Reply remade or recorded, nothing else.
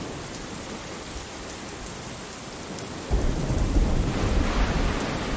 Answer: recorded